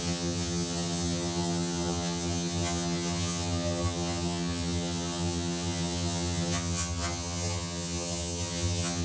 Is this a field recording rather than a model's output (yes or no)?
no